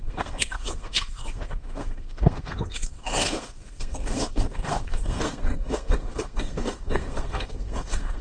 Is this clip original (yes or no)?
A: no